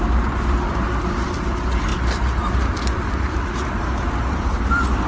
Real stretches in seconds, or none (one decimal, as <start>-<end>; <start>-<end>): 0.0-5.1

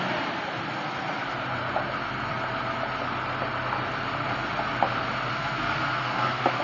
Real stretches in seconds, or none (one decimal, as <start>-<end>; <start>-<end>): 0.0-5.3

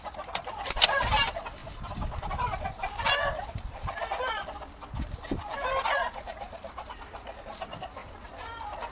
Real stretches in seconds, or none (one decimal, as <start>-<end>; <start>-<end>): none

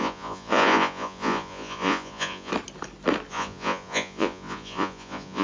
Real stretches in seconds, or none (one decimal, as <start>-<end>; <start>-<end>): 2.5-3.3

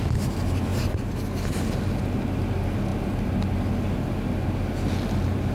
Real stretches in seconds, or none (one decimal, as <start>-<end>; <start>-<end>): 0.0-5.5

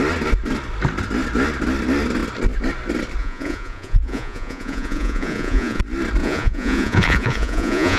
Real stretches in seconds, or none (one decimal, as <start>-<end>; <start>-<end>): 0.0-3.2; 5.8-6.2

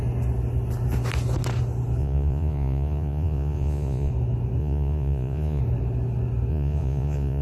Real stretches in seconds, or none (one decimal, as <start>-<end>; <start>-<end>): 0.0-2.0; 4.1-4.6; 5.6-6.5